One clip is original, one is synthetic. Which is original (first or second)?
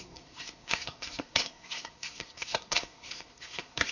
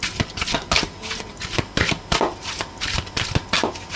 second